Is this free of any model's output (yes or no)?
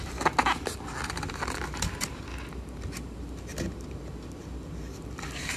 yes